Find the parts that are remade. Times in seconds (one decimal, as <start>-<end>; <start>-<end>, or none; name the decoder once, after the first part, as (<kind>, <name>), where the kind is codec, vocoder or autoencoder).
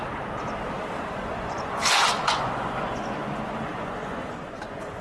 1.0-5.0 (vocoder, Vocos)